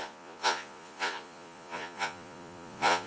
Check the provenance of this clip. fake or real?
fake